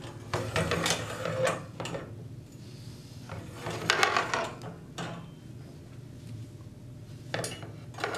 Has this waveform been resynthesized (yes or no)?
no